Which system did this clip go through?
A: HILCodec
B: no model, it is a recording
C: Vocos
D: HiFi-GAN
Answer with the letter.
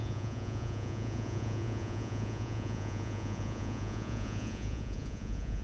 C